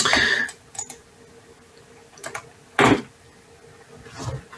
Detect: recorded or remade recorded